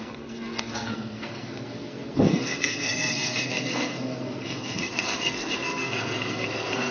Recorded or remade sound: remade